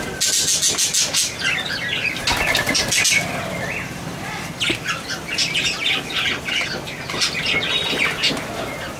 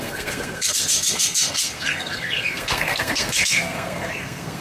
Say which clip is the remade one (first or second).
second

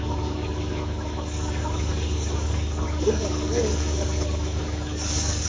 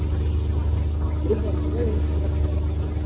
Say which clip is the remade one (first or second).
first